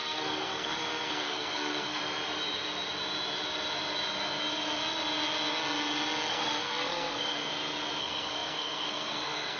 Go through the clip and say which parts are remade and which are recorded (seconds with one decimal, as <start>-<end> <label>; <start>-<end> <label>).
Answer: 0.0-2.0 remade; 2.0-6.3 recorded; 6.3-7.5 remade; 7.5-8.0 recorded; 8.0-9.6 remade